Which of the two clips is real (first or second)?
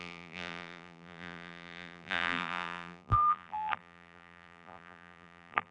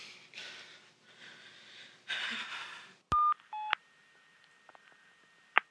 second